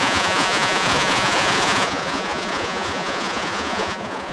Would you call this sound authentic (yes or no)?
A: no